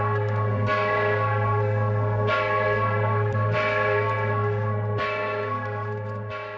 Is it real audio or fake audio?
fake